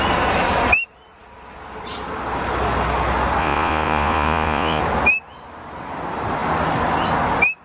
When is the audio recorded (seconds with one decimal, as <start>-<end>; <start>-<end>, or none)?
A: 0.0-3.4; 4.8-7.6